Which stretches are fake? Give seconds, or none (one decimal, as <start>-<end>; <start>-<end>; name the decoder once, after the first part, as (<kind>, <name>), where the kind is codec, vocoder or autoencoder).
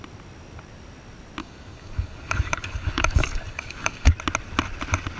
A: 1.4-4.1 (codec, DAC)